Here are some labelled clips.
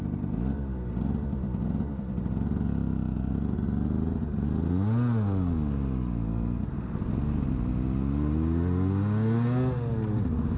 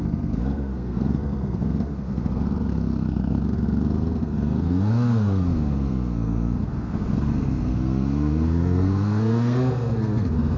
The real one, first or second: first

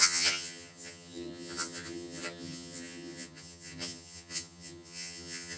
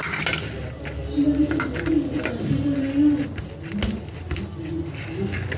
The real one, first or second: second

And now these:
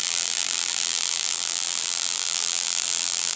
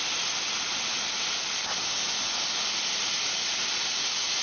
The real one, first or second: second